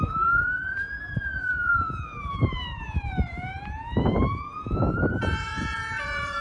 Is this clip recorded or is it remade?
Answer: remade